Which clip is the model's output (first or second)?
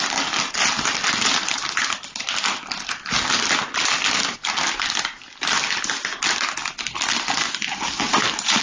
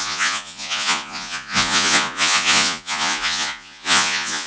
second